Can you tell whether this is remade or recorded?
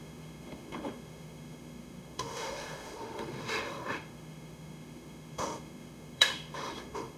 remade